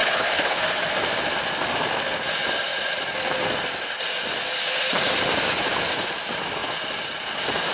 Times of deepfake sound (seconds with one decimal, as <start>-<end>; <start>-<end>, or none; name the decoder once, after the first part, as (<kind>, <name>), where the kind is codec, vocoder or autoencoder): 0.0-0.6 (codec, HILCodec)